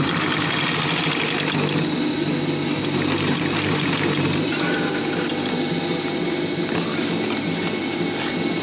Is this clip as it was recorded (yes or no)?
yes